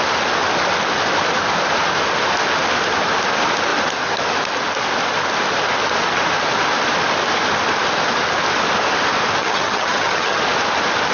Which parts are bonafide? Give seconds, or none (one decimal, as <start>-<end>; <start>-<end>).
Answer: 0.0-9.4; 10.4-11.1